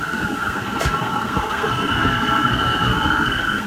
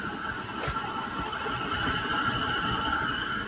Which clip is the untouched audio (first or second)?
second